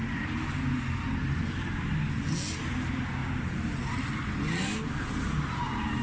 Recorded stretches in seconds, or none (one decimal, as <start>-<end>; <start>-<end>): 0.0-6.0